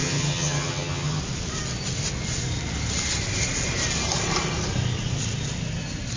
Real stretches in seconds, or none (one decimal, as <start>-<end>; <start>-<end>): 1.2-6.2

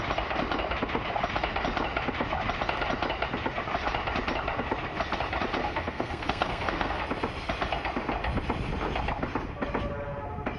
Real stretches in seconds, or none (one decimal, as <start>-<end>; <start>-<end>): 0.0-5.6; 7.0-10.6

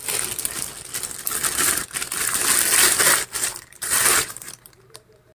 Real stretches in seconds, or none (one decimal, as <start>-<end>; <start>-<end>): 0.0-1.6; 2.4-3.4